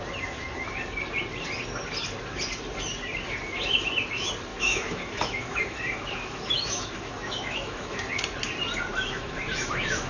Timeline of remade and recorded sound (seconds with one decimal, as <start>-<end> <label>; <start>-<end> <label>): 0.0-4.5 recorded; 4.5-8.1 remade; 8.1-8.9 recorded; 8.9-10.1 remade